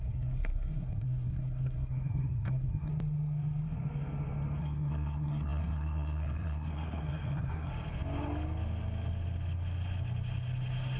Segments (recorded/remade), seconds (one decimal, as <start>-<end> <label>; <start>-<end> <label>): 0.0-2.9 remade; 2.9-4.6 recorded; 4.6-7.7 remade; 7.7-11.0 recorded